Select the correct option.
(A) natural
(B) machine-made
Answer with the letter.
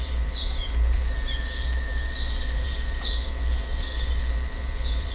B